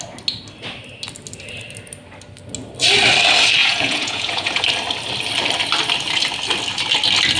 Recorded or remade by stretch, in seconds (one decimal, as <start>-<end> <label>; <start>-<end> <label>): 0.0-3.6 recorded; 3.6-4.6 remade; 4.6-7.4 recorded